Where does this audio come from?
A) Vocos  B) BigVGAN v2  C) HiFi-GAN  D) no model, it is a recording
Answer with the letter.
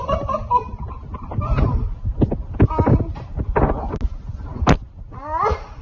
D